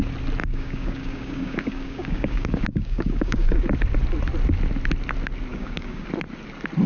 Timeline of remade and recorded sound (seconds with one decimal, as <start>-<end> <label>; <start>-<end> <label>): 0.0-0.4 recorded; 0.4-3.6 remade; 3.6-5.5 recorded; 5.5-6.1 remade; 6.1-6.9 recorded